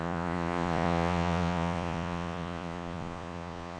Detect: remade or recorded remade